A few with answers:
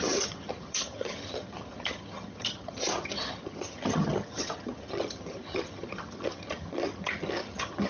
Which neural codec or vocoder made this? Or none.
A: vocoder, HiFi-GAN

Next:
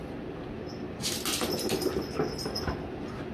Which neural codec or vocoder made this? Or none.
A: none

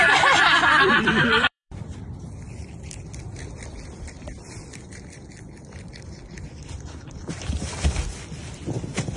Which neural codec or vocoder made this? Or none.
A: vocoder, BigVGAN v2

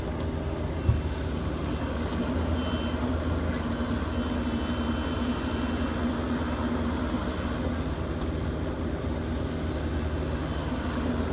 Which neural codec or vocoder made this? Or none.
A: none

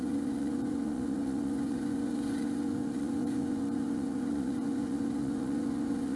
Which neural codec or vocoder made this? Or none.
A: vocoder, Vocos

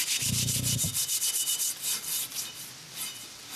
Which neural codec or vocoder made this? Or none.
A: none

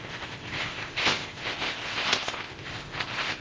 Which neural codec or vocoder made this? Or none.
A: codec, ZipCodec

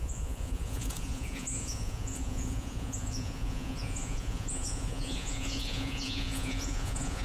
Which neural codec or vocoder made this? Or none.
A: vocoder, Vocos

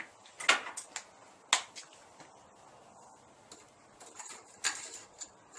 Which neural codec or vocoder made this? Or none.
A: none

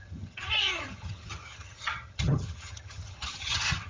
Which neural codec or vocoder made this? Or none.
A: vocoder, HiFi-GAN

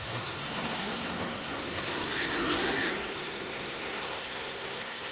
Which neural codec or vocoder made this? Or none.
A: codec, SNAC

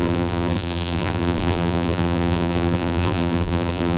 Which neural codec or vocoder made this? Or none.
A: vocoder, BigVGAN v2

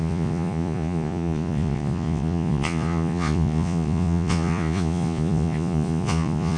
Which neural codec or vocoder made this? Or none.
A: vocoder, Vocos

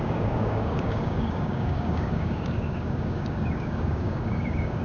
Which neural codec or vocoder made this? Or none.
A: codec, DAC